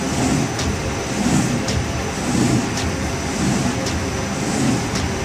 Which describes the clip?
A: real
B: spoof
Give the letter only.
A